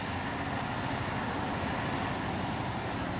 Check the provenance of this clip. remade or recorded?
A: recorded